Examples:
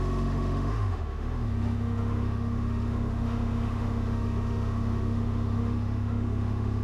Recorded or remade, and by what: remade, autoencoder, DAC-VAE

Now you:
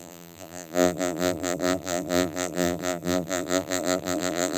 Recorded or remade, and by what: remade, vocoder, BigVGAN v2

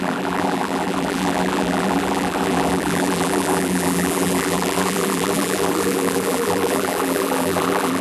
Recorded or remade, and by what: remade, vocoder, BigVGAN v2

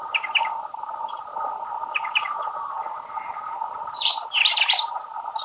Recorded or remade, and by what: remade, vocoder, BigVGAN v2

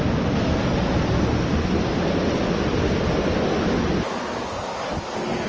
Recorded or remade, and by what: recorded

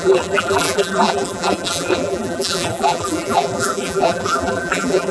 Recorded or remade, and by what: remade, vocoder, BigVGAN v2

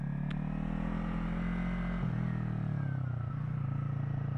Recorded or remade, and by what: recorded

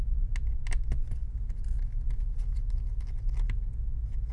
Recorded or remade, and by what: recorded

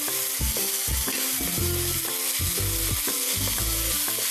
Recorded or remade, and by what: recorded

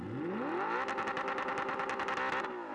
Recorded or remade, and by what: recorded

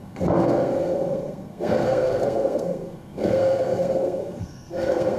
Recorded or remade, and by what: remade, codec, SNAC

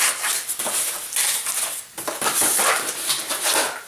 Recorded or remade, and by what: recorded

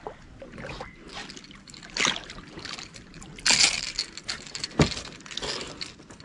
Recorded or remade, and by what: recorded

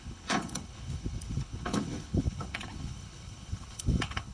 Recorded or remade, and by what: remade, codec, HILCodec